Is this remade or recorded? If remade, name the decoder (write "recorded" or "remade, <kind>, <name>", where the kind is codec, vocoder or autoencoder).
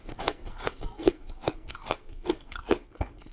remade, codec, SNAC